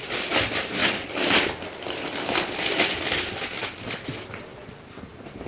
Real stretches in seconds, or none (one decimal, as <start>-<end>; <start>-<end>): 0.0-4.5; 5.1-5.5